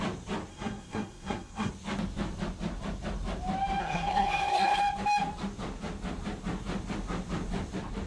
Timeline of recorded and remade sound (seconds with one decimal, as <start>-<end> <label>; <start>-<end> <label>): 0.0-0.5 recorded; 0.5-1.7 remade; 1.7-3.8 recorded; 3.8-4.8 remade; 4.8-8.1 recorded